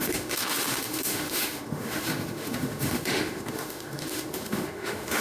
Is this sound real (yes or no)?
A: no